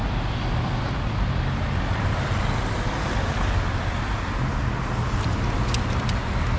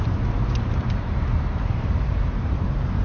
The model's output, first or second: second